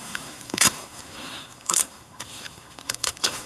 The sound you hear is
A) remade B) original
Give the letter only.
A